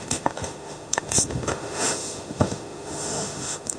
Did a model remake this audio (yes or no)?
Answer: yes